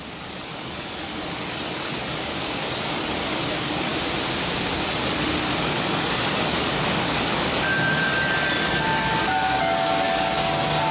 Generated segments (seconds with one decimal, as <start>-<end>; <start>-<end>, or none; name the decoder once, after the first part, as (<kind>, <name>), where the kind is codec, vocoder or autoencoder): 0.0-3.9 (codec, DAC); 4.6-10.9